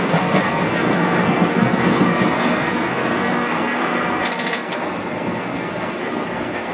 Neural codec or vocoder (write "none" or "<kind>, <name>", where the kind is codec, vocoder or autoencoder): codec, SNAC